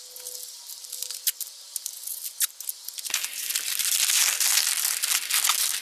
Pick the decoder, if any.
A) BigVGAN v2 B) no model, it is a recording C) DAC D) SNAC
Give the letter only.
B